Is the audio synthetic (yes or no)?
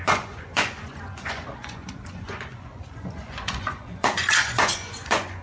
yes